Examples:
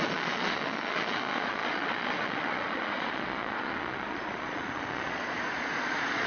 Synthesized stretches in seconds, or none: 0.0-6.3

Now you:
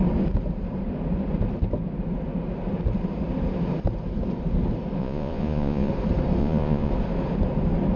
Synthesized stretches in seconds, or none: 5.0-5.9; 6.4-6.9

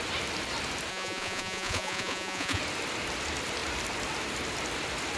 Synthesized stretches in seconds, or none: 0.9-2.6

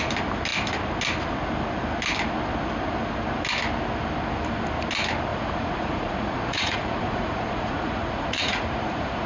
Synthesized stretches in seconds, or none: 5.3-9.3

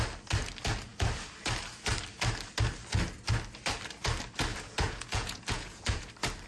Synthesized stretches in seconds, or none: 4.5-6.1